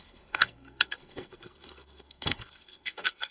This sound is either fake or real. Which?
fake